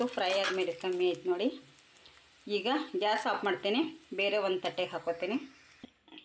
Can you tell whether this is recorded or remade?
recorded